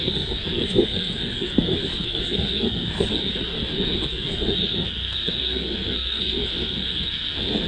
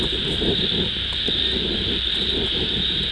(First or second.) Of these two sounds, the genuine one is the second